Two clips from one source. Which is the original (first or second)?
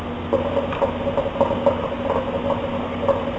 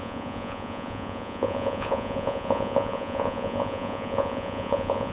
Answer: first